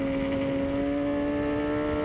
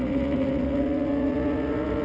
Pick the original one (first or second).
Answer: first